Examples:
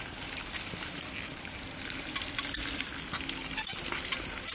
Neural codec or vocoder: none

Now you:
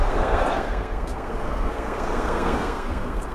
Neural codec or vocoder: codec, SNAC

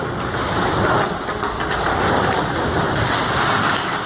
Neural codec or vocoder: none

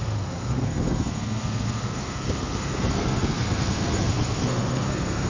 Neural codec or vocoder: codec, SNAC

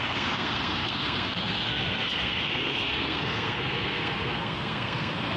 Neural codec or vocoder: codec, SNAC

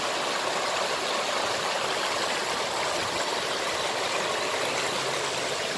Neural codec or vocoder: none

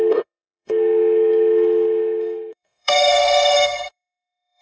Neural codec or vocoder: codec, SNAC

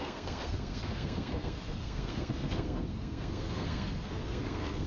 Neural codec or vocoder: codec, SNAC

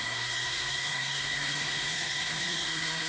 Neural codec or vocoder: codec, SNAC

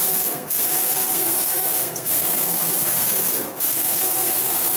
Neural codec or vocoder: codec, SNAC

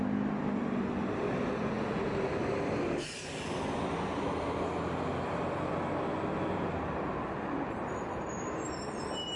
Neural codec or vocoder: none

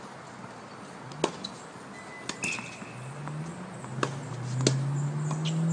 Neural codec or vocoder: none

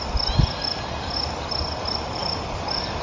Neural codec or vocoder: none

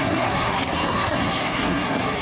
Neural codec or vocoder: codec, SNAC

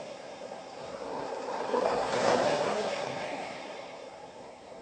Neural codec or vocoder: codec, SNAC